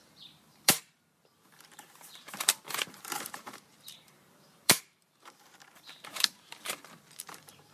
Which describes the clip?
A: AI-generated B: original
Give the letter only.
A